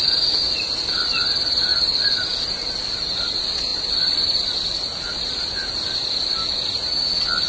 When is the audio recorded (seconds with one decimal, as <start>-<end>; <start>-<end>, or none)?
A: 0.0-7.5